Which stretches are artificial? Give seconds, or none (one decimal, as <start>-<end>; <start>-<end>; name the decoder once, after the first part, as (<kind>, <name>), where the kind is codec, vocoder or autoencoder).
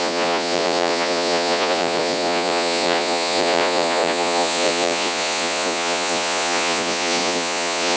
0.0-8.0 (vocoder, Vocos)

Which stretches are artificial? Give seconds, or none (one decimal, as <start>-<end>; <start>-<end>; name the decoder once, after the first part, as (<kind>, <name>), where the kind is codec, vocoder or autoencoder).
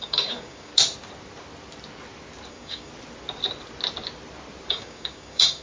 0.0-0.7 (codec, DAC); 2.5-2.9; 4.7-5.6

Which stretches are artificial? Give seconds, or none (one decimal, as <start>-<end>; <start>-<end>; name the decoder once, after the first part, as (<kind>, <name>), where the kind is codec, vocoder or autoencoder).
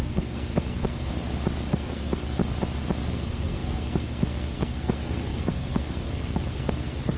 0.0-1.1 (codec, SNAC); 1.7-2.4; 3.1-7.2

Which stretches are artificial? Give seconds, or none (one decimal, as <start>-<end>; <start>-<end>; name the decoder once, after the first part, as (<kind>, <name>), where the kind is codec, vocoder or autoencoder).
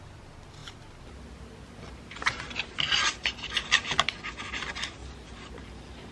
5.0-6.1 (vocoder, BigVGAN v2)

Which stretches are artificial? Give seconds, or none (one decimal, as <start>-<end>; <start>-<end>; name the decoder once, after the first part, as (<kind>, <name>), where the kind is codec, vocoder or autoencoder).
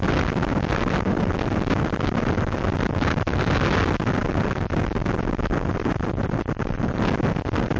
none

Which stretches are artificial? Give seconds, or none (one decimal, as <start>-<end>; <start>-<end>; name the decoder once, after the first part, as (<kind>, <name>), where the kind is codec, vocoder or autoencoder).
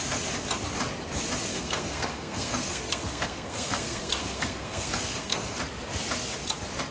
1.5-5.6 (codec, SNAC)